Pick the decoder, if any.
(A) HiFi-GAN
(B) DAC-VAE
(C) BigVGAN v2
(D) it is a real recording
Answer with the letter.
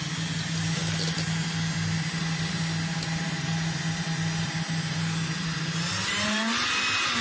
D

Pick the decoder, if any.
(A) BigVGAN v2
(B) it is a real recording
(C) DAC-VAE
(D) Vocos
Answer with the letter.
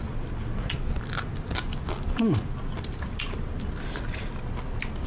B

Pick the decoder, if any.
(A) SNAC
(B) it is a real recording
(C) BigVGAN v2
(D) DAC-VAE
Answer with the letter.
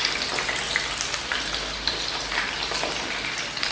B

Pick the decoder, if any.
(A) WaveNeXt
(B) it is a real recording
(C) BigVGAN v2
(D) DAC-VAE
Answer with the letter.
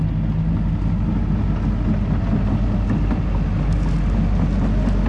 B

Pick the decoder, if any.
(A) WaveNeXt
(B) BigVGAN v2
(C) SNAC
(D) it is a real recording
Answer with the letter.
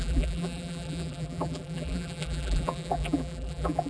B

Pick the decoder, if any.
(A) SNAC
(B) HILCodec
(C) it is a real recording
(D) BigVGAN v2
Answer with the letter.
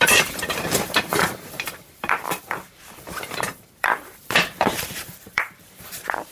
D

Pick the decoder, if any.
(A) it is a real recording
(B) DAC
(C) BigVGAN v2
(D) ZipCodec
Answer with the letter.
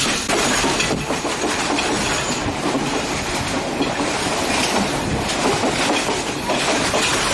A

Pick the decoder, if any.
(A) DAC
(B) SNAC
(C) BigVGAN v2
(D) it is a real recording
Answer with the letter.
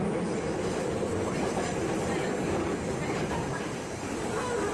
C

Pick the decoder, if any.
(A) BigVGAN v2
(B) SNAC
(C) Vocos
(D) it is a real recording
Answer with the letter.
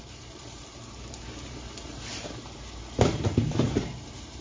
A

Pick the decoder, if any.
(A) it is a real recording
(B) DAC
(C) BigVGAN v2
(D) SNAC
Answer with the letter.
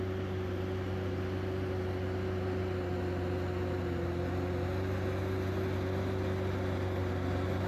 A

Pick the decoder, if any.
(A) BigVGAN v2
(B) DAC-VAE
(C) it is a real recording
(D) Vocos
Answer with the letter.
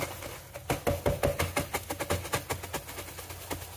C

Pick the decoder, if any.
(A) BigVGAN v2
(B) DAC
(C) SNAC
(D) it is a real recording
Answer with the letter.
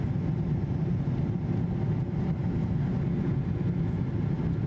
D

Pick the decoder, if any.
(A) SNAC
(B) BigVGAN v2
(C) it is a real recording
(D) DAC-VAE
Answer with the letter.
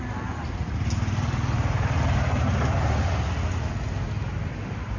C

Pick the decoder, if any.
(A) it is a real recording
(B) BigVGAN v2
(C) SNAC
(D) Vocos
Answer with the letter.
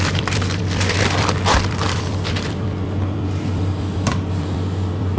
B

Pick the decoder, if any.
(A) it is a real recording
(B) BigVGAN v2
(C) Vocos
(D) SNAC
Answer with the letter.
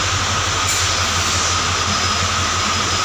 A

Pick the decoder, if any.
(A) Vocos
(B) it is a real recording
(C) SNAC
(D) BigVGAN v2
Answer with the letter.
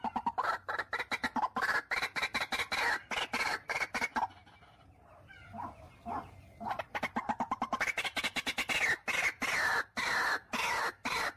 B